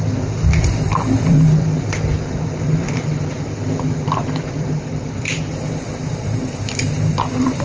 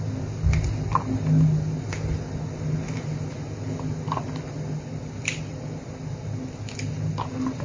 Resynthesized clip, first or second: first